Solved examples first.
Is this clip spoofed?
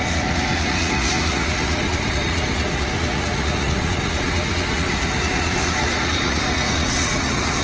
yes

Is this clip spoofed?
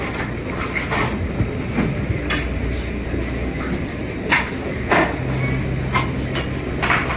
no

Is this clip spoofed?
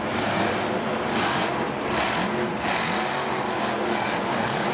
no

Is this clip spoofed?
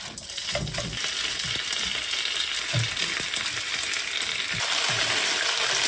no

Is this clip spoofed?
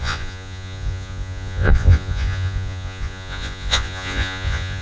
yes